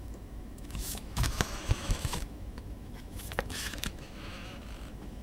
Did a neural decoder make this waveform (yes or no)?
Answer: yes